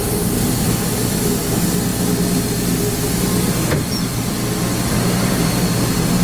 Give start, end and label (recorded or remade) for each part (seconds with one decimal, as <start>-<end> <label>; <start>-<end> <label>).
0.0-1.2 remade; 1.2-6.2 recorded